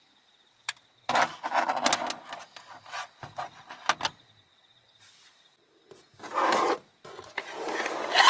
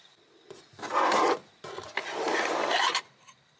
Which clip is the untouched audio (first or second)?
first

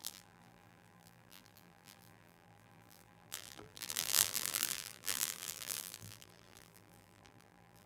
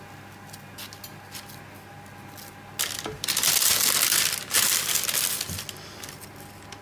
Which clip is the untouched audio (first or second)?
second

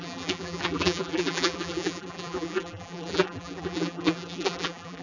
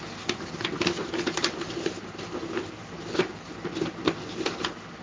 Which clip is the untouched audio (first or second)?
second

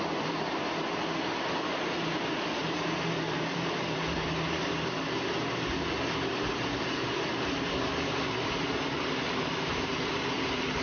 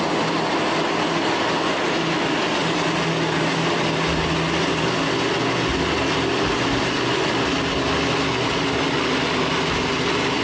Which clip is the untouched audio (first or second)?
second